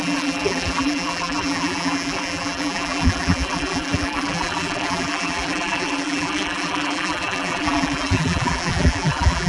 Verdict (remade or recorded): remade